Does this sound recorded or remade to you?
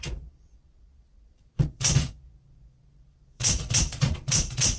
remade